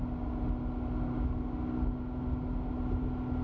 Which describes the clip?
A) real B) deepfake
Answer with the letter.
A